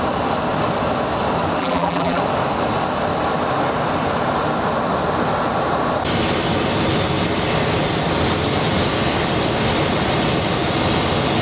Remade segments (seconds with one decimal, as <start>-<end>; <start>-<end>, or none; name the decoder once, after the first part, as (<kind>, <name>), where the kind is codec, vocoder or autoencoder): 1.6-2.2 (vocoder, BigVGAN v2)